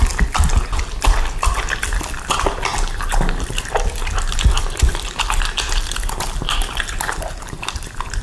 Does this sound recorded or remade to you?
recorded